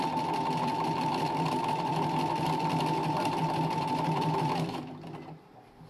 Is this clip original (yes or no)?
no